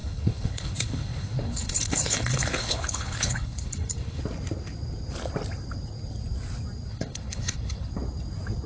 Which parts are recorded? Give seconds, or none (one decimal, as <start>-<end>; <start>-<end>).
4.2-6.9; 7.9-8.7